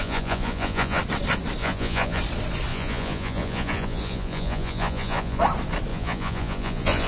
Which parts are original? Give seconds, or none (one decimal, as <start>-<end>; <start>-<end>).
1.0-1.6; 2.2-2.7; 5.4-5.9